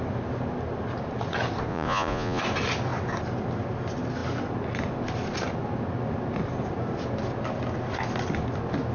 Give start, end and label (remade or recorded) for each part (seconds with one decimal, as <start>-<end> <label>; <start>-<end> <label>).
0.0-1.7 recorded; 1.7-2.4 remade; 2.4-8.9 recorded